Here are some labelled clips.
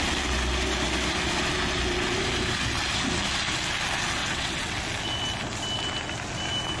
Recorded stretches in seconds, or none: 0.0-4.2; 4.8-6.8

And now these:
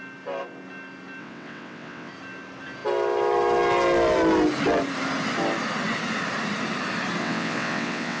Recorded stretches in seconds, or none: 0.0-1.2; 2.1-7.2